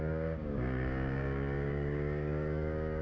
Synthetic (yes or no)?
yes